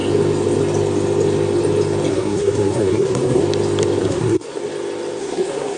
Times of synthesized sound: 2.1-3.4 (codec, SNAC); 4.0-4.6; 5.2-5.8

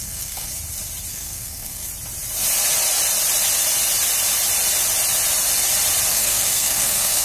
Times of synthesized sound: 0.0-0.5 (codec, SNAC); 1.1-1.9; 6.1-7.2

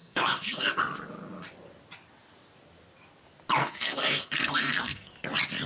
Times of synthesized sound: 0.0-0.8 (codec, SNAC); 3.6-5.1

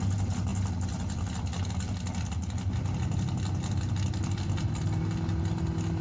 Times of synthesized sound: none

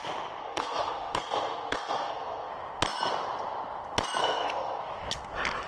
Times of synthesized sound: 0.4-2.5 (codec, SNAC); 4.2-4.8

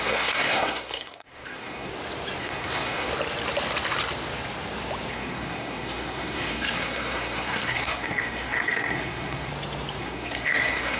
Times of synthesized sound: 0.0-1.9 (codec, SNAC); 2.4-3.1; 5.1-9.5; 10.0-11.0

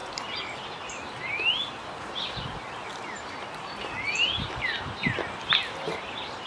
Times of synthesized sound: none

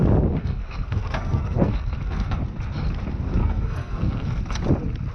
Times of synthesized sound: 0.4-2.4 (codec, SNAC); 3.4-4.4